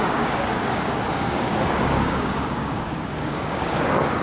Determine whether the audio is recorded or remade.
remade